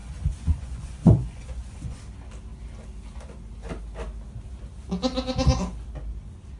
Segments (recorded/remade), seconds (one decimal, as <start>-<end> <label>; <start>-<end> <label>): 0.0-2.0 remade; 2.0-6.6 recorded